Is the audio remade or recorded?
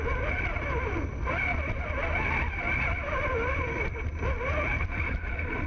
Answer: recorded